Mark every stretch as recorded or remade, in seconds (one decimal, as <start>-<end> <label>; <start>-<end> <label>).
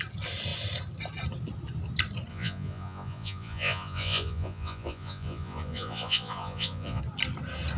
0.0-2.3 recorded; 2.3-7.0 remade; 7.0-7.8 recorded